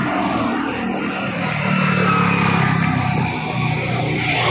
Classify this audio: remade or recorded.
recorded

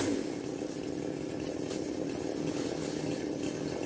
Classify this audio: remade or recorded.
recorded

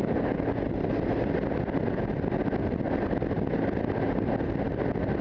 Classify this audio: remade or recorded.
recorded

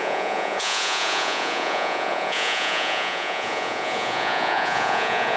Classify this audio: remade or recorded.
remade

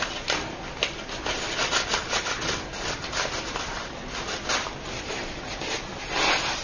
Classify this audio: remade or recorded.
recorded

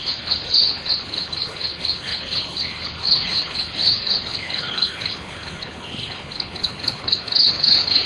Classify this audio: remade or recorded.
remade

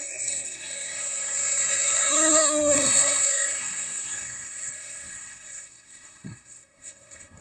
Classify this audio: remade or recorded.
remade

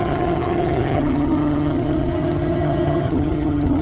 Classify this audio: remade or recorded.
remade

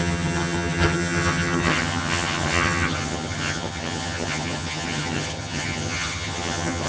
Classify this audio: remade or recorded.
remade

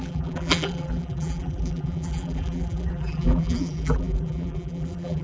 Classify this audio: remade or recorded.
remade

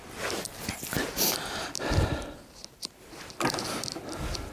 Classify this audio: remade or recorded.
recorded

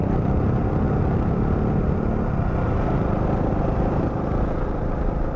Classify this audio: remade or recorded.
recorded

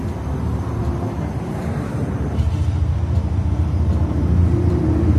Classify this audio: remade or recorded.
remade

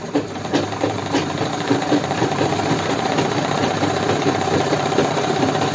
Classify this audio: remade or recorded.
remade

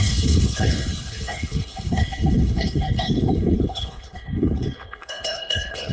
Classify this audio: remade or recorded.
remade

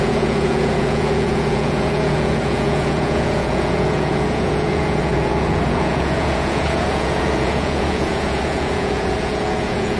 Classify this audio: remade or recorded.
remade